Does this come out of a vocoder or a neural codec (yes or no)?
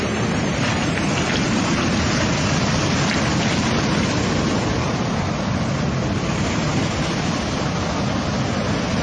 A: no